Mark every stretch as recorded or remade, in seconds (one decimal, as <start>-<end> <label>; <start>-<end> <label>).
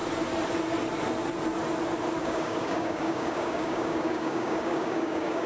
0.0-2.2 recorded; 2.2-5.5 remade